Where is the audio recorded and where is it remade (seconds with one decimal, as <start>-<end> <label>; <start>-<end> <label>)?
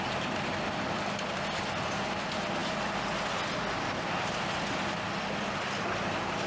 0.0-6.5 recorded